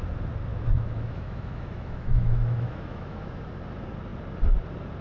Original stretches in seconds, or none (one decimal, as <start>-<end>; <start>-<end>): 0.0-0.5; 3.5-5.0